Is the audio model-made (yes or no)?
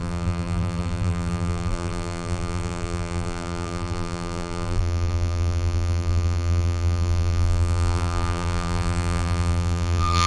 yes